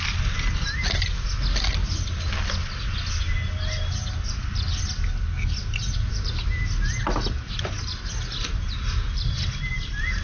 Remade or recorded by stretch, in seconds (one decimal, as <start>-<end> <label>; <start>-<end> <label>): 0.0-10.2 recorded